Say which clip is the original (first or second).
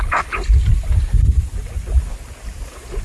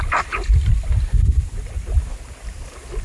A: first